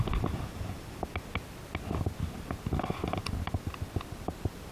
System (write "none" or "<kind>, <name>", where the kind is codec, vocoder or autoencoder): none